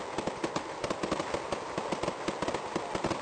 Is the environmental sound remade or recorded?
recorded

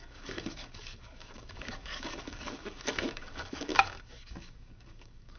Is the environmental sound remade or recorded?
remade